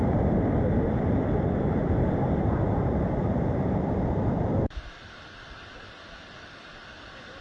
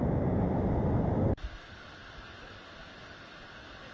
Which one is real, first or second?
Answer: second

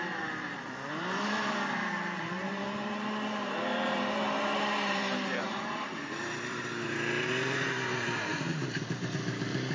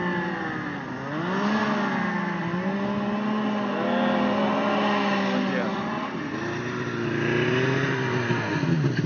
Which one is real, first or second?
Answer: second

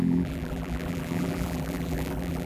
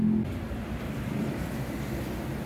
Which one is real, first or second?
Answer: second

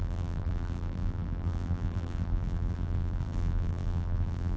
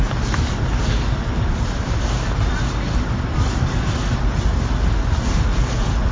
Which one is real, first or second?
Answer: second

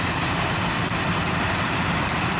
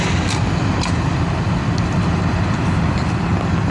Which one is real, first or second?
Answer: second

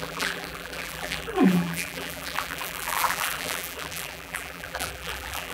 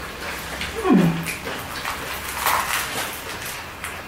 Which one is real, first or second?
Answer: second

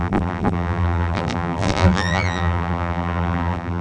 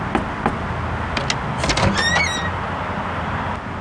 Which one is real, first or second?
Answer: second